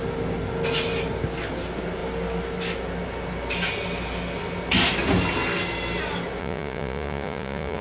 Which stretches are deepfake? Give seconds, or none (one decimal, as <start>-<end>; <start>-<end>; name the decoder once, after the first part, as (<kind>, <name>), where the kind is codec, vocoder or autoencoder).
6.4-7.8 (vocoder, Vocos)

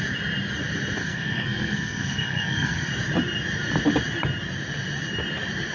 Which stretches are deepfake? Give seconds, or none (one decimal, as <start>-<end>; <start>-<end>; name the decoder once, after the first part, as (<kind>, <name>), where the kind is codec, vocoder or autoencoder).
1.0-2.9 (codec, SNAC)

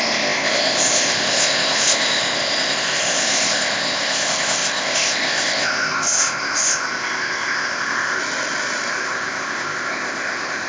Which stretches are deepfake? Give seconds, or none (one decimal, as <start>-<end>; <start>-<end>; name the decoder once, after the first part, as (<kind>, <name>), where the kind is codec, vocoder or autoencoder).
0.0-8.2 (codec, ZipCodec); 8.9-10.7

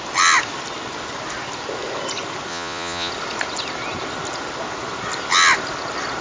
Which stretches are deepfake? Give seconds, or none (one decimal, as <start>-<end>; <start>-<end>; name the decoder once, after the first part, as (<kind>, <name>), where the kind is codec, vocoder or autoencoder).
2.5-3.1 (vocoder, Vocos)

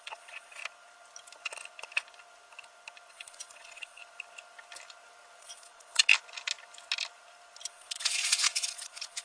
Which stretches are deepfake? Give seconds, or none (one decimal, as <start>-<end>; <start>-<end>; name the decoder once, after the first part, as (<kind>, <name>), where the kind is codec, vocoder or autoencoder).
0.0-0.6 (vocoder, Vocos); 3.1-4.0; 5.4-6.1; 7.7-9.2

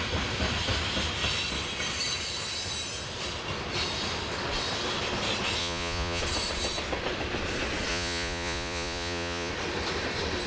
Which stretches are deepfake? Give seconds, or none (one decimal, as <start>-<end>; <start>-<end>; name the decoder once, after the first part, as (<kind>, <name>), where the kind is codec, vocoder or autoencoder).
5.6-6.2 (vocoder, Vocos); 7.9-9.5

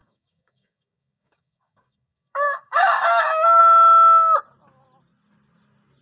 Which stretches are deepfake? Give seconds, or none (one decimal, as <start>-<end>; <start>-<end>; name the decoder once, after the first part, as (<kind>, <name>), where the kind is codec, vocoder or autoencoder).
0.0-3.6 (codec, DAC)

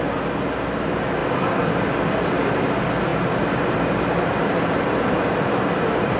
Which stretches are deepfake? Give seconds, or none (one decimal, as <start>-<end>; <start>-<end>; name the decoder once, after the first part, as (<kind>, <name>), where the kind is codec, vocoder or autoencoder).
none